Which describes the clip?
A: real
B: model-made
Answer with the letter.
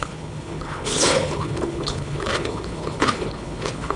B